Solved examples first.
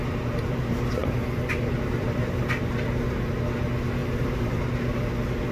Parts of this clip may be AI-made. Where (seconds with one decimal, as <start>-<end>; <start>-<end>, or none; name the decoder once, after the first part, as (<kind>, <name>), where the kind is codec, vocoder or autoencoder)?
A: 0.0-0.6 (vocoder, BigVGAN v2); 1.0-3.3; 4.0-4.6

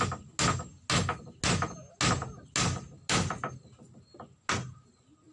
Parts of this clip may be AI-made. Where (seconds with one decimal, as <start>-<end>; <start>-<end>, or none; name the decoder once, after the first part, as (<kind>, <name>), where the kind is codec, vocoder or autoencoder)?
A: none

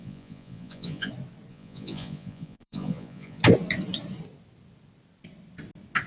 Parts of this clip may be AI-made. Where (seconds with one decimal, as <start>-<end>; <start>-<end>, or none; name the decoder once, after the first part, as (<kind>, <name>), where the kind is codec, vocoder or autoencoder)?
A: 0.0-1.1 (vocoder, Vocos); 1.5-3.4